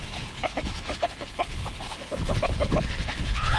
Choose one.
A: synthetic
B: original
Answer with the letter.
A